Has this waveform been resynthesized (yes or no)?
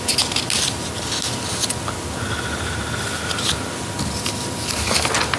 no